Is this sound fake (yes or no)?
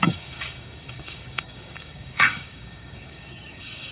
yes